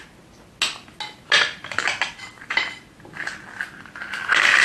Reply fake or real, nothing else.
real